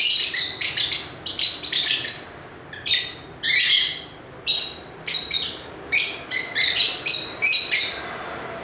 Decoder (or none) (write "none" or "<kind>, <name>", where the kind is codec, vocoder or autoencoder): none